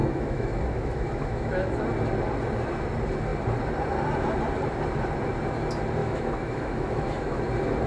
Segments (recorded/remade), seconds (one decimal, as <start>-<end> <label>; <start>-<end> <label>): 0.0-1.8 remade; 1.8-6.0 recorded; 6.0-7.4 remade; 7.4-7.9 recorded